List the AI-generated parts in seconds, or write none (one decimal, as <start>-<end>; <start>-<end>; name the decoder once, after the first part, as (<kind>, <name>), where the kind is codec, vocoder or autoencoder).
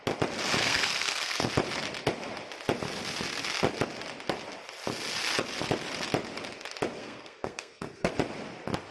0.6-1.5 (codec, SNAC); 7.0-8.1